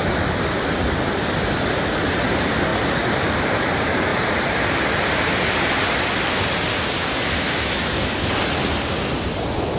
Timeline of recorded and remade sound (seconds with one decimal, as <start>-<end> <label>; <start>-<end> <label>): 0.0-9.8 recorded